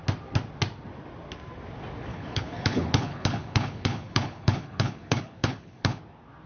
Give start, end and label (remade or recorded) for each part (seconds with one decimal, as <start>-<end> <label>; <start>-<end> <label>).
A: 0.0-2.1 recorded; 2.1-6.0 remade; 6.0-6.5 recorded